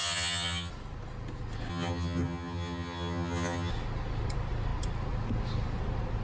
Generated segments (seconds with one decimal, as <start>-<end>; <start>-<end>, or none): 0.0-0.7; 1.7-3.7